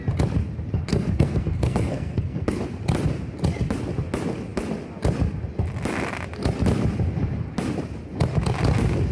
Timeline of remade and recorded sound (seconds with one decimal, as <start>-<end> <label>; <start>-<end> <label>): 0.0-0.9 recorded; 0.9-2.6 remade; 2.6-9.1 recorded